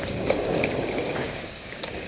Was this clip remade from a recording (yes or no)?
yes